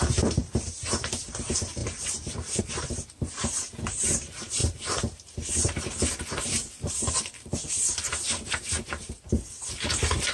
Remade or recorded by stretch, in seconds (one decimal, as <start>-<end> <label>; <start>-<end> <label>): 0.0-10.3 remade